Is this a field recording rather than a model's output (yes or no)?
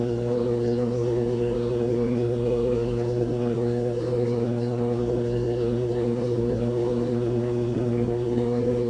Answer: no